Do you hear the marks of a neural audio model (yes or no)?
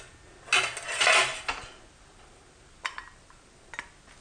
no